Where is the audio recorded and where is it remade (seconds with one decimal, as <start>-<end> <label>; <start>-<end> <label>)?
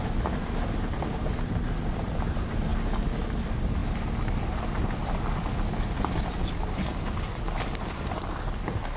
0.0-9.0 recorded